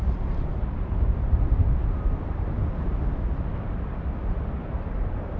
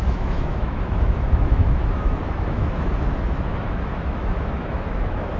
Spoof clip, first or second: second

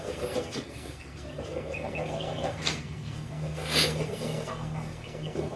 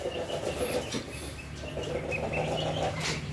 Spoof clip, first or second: first